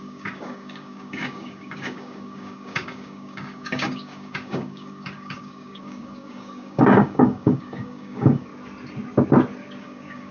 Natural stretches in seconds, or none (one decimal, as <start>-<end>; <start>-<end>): 8.5-9.8